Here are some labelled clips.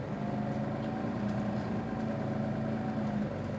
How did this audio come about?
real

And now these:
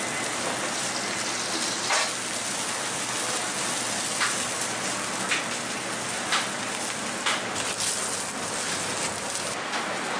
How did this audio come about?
real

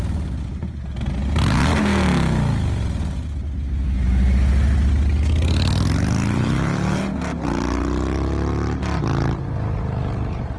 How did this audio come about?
real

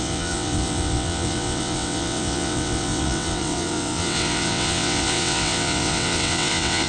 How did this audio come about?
fake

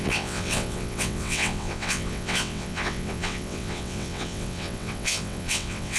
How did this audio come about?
fake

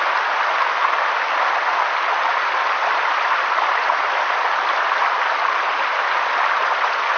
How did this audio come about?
real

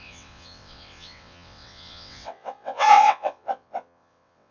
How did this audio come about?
fake